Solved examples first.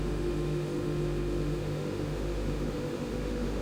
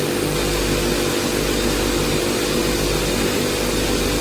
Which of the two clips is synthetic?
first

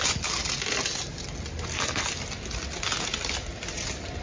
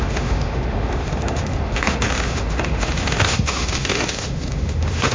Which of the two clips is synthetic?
second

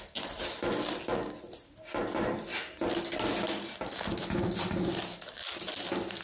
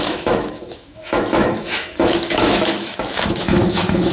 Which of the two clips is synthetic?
second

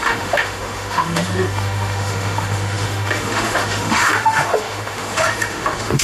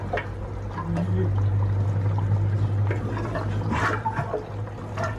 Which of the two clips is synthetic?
first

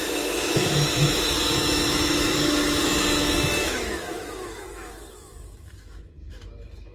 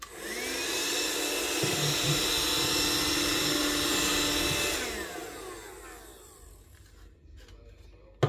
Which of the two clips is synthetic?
first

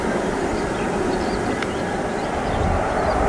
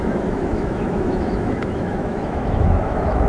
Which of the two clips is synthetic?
second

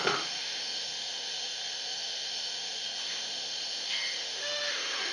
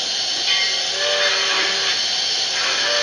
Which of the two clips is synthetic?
first